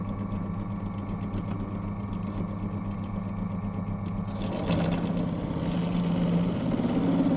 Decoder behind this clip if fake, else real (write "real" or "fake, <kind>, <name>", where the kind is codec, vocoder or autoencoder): real